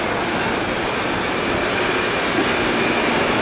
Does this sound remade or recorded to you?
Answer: recorded